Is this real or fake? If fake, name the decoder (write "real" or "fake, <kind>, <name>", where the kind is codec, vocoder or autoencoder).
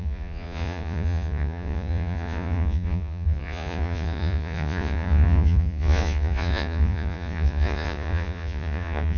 fake, vocoder, Vocos